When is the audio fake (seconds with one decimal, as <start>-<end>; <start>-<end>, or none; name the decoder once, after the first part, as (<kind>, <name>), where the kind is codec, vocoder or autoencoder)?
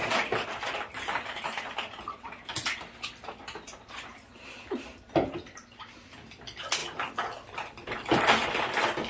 none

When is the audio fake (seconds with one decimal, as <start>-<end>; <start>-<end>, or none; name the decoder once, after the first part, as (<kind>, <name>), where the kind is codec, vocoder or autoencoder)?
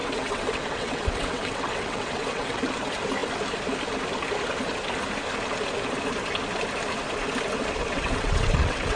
0.0-2.7 (vocoder, WaveNeXt); 7.8-9.0